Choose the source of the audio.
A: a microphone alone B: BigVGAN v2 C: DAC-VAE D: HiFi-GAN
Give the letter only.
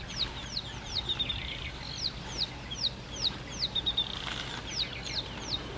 A